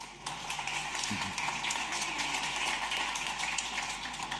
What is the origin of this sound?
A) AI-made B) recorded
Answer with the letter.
A